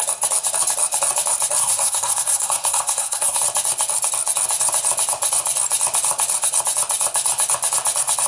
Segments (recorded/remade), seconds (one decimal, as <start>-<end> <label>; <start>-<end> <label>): 0.0-1.6 recorded; 1.6-3.4 remade; 3.4-8.3 recorded